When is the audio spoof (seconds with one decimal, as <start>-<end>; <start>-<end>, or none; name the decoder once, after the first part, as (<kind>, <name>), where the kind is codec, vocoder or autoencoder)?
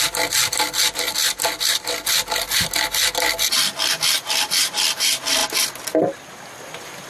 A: none